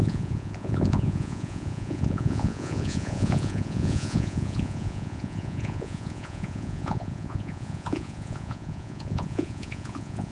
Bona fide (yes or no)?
no